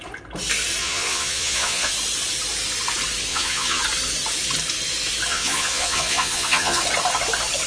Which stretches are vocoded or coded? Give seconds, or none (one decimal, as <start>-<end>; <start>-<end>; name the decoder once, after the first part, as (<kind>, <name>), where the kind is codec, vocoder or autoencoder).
0.8-1.9 (vocoder, Vocos); 3.3-3.8; 5.3-6.8